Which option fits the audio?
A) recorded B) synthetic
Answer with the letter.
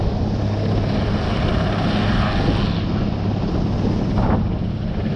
A